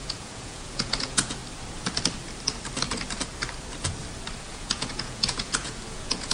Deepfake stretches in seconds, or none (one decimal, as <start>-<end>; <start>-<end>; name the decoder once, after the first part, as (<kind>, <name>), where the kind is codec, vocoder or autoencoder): 0.0-1.4 (vocoder, Vocos); 4.4-6.3